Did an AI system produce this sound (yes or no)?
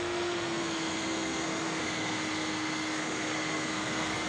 yes